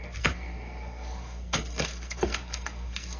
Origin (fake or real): fake